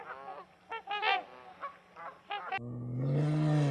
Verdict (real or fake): real